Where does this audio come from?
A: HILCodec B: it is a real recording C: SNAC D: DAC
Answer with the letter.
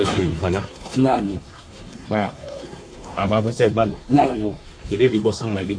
C